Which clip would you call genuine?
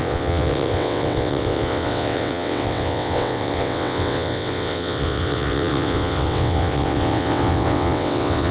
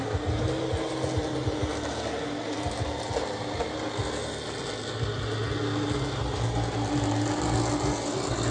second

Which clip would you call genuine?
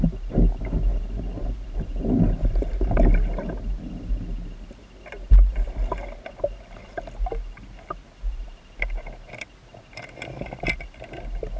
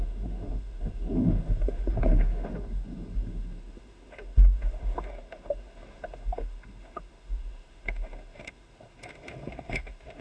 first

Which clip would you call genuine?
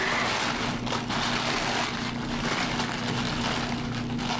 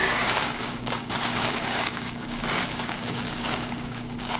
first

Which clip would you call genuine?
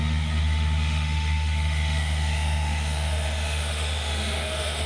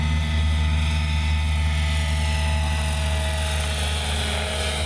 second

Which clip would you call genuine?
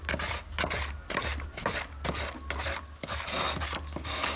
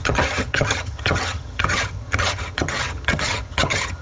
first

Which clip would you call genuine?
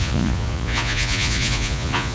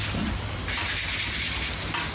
second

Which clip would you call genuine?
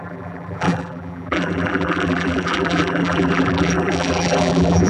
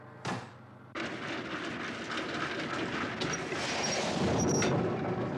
second